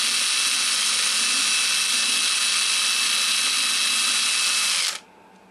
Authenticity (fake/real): real